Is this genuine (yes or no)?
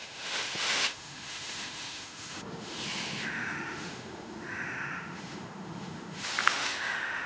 no